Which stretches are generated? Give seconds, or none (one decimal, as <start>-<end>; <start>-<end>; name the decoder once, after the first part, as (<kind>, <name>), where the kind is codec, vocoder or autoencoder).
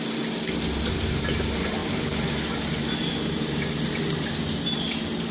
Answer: 1.8-2.5 (vocoder, BigVGAN v2)